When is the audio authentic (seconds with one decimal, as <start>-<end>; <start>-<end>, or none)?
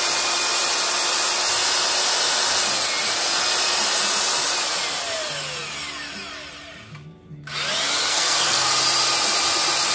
0.0-8.1; 8.7-9.9